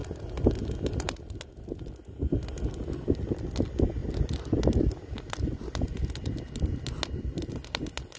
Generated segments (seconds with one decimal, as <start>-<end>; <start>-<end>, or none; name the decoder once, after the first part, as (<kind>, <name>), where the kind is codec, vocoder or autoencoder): none